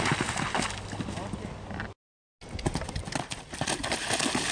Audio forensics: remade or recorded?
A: recorded